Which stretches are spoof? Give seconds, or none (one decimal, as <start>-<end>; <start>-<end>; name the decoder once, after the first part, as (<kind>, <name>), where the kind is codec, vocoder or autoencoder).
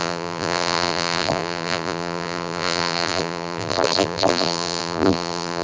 0.0-5.6 (vocoder, BigVGAN v2)